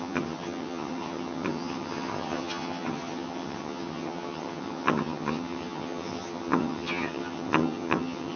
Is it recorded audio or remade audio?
remade